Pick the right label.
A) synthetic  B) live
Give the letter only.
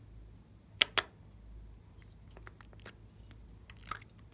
B